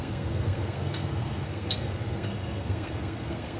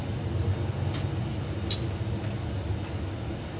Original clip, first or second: second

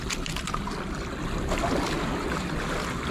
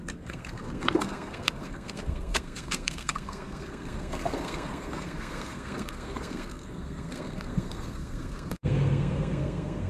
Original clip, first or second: first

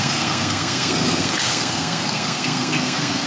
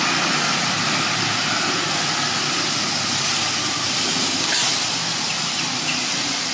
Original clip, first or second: second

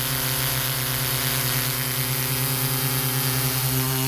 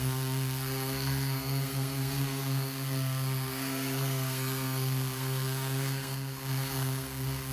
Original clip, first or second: first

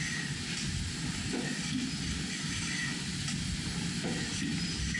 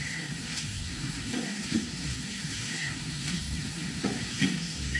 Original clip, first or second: first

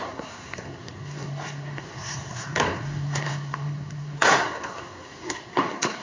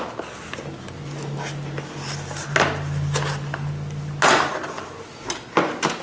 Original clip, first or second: second